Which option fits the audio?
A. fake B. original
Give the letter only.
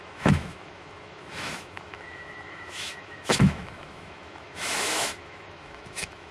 A